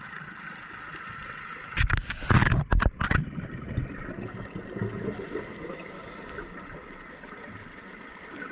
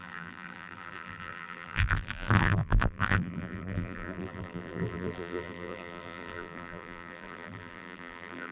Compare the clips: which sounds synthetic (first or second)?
second